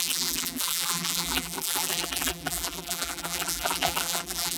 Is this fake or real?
fake